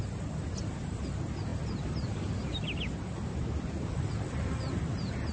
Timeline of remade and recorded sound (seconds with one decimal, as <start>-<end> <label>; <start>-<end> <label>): 0.0-5.3 recorded